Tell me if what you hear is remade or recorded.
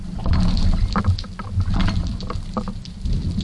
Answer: recorded